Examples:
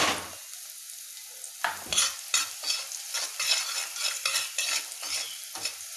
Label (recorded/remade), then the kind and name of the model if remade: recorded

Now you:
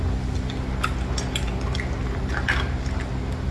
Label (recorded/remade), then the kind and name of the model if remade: recorded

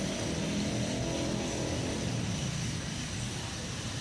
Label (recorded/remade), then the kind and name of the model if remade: recorded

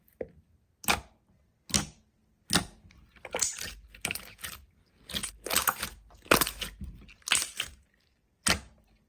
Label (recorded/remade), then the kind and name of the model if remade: recorded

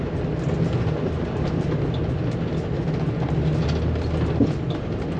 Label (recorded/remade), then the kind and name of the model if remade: recorded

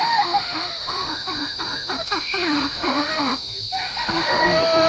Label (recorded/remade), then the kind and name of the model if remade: remade, autoencoder, DAC-VAE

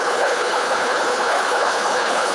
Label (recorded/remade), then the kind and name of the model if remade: remade, codec, HILCodec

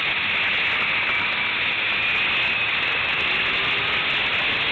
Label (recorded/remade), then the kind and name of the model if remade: recorded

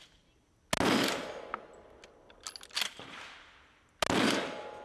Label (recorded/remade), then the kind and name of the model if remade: recorded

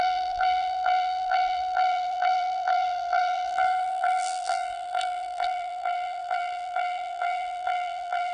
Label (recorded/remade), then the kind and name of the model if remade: remade, vocoder, BigVGAN v2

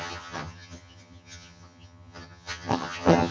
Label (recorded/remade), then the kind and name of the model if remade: remade, vocoder, HiFi-GAN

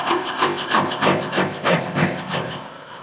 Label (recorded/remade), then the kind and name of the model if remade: remade, codec, ZipCodec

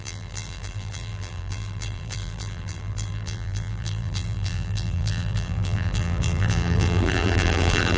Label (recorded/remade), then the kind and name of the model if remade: remade, vocoder, BigVGAN v2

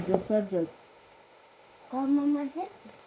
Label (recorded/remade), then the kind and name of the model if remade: remade, autoencoder, DAC-VAE